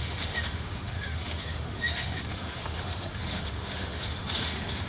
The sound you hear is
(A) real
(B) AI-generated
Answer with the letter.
B